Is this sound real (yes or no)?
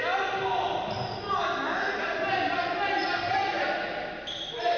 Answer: yes